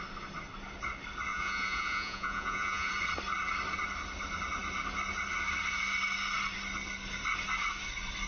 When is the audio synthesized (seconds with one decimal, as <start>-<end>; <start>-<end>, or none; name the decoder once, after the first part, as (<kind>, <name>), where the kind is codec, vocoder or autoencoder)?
1.3-2.9 (vocoder, Vocos)